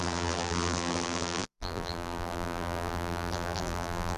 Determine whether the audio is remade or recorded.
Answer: remade